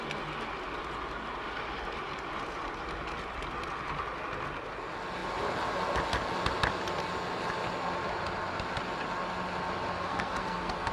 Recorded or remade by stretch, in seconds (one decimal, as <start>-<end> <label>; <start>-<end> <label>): 0.0-10.0 recorded; 10.0-10.9 remade